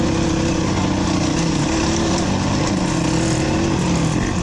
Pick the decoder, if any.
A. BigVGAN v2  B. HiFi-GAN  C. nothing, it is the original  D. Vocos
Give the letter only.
C